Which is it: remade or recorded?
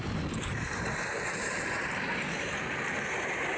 recorded